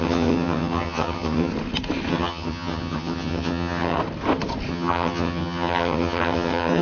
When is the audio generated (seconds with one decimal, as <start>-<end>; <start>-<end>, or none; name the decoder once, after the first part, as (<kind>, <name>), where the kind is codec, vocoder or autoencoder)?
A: 0.0-1.5 (vocoder, HiFi-GAN); 2.1-4.0; 4.7-6.8